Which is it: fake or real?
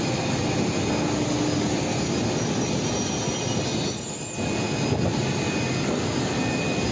real